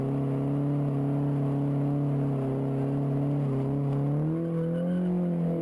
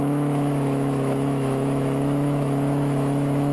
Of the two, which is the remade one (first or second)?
second